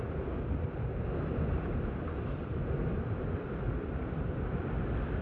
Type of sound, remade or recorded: recorded